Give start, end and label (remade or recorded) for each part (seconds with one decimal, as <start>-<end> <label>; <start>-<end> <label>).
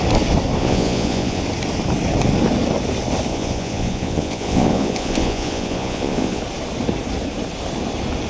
0.0-0.6 recorded; 0.6-1.4 remade; 1.4-3.3 recorded; 3.3-6.4 remade; 6.4-8.3 recorded